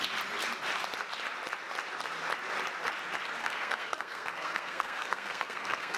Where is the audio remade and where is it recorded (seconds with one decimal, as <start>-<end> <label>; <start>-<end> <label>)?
0.0-3.4 recorded; 3.4-6.0 remade